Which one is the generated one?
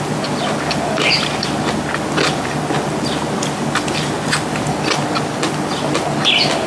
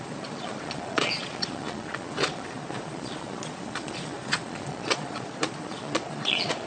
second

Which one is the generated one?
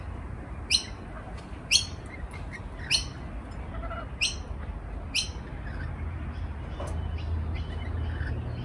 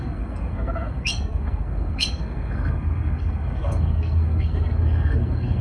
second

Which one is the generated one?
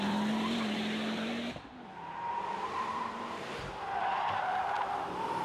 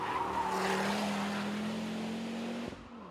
first